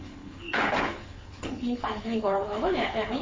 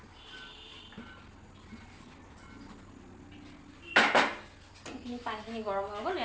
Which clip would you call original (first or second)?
second